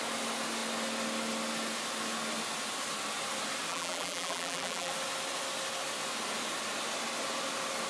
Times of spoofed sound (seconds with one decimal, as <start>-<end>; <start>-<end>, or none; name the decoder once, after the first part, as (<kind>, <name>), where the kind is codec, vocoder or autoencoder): 3.7-4.9 (vocoder, BigVGAN v2)